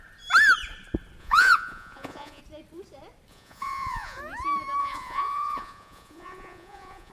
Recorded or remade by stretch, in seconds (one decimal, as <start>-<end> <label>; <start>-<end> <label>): 0.0-1.2 recorded; 1.2-2.4 remade; 2.4-3.3 recorded; 3.3-4.2 remade; 4.2-4.8 recorded; 4.8-7.1 remade